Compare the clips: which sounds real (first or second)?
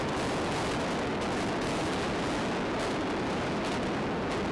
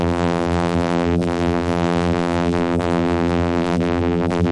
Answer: first